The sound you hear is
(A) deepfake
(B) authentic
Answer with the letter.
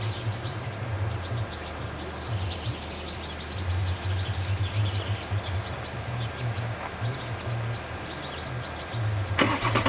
B